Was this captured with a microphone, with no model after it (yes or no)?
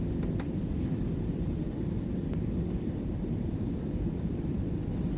no